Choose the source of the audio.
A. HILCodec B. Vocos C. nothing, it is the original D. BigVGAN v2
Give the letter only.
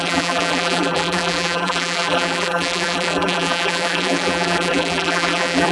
D